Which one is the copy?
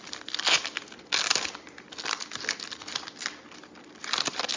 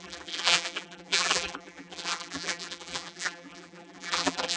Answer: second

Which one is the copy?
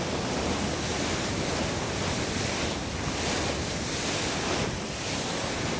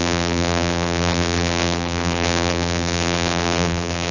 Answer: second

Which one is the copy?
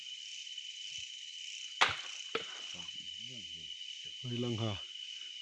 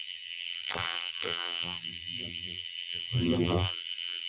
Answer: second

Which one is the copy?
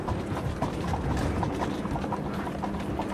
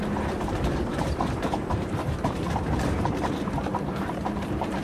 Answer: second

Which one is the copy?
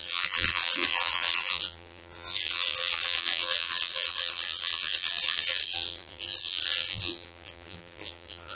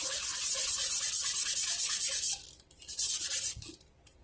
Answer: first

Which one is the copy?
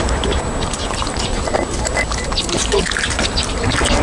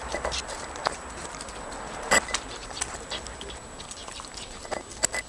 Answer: first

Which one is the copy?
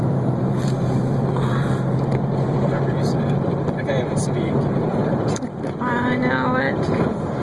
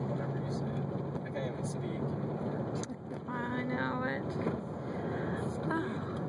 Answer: first